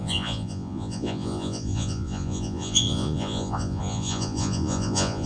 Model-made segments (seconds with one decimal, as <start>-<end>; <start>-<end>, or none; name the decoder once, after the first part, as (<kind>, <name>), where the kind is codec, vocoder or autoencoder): 0.0-5.3 (vocoder, Vocos)